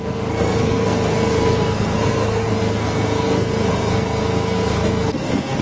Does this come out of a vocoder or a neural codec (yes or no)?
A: yes